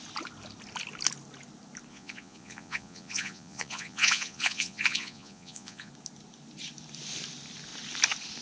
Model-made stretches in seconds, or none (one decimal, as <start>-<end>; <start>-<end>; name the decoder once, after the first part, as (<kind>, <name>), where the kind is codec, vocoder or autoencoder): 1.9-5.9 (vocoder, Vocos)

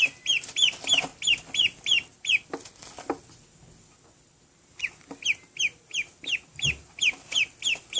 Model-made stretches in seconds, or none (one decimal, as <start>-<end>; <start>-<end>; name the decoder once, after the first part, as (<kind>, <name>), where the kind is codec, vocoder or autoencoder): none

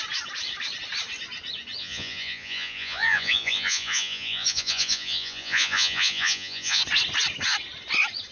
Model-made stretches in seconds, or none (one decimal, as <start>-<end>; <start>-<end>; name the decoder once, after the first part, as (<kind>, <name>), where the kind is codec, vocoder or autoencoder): 1.8-6.8 (vocoder, Vocos)